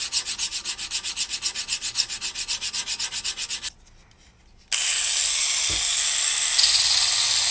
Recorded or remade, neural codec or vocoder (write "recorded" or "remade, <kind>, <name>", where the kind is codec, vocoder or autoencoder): recorded